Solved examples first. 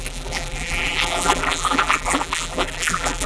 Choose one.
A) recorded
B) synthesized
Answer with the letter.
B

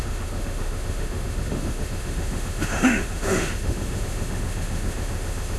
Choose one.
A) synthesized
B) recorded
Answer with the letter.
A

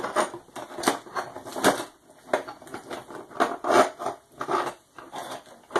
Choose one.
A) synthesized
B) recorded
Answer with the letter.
B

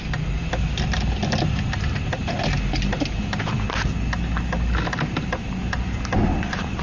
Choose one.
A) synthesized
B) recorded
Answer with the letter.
B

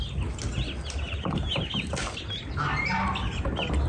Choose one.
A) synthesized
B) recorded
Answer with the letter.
B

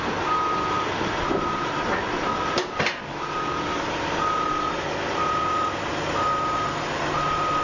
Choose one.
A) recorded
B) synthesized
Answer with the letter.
A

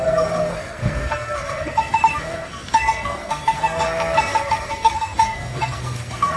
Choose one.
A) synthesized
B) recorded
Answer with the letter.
A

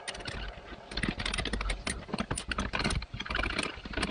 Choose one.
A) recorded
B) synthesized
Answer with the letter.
A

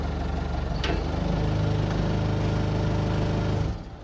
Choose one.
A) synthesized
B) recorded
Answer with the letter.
B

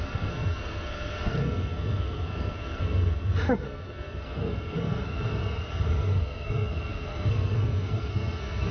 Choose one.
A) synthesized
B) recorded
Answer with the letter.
A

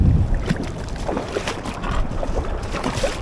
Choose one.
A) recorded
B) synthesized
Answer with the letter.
B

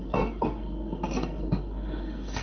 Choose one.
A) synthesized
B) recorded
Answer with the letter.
A